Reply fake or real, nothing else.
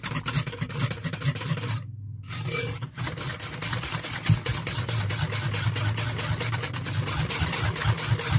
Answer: real